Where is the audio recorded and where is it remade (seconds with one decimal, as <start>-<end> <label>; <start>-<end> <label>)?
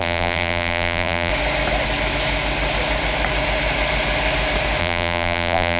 0.0-1.3 remade; 1.3-4.8 recorded; 4.8-5.8 remade